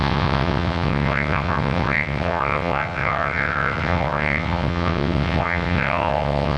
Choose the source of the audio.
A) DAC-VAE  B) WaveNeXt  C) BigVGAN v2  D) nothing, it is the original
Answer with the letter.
B